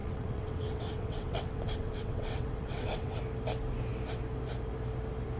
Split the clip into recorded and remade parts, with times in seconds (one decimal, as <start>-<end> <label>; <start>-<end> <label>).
0.0-3.2 remade; 3.2-5.4 recorded